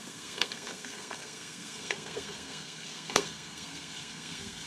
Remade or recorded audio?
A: remade